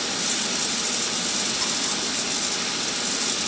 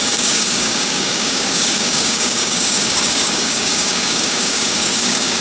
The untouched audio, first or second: first